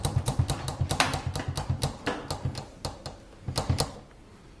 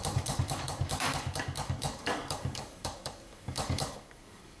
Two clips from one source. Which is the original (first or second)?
first